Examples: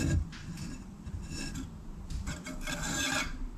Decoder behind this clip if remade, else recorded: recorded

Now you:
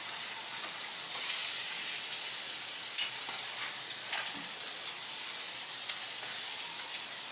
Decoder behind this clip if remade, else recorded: recorded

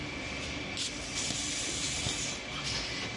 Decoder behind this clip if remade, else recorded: recorded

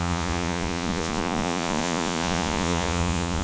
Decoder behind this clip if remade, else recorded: remade, vocoder, Vocos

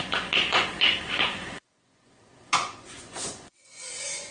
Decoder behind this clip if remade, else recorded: remade, vocoder, Vocos